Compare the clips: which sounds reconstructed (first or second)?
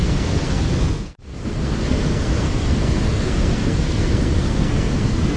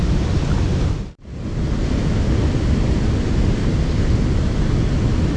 first